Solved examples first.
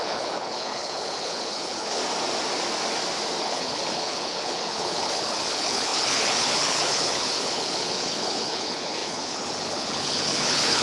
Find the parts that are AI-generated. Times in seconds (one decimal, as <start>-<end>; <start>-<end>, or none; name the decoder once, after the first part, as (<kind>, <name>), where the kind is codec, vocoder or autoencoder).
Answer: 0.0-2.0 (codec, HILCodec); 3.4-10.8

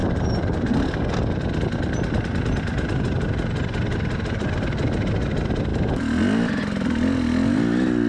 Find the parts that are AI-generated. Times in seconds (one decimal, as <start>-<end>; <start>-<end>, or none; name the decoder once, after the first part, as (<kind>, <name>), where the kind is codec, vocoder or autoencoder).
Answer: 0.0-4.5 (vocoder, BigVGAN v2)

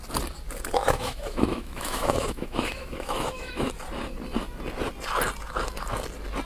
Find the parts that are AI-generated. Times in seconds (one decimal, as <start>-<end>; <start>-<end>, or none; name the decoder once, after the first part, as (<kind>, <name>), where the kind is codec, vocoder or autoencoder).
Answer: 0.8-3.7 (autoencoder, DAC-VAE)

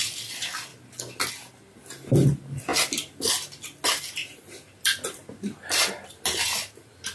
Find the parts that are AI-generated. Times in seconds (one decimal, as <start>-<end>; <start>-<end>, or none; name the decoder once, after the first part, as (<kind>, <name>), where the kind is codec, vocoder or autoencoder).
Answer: none